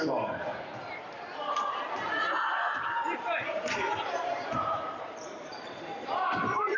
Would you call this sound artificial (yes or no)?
yes